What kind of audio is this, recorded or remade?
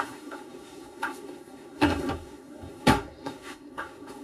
remade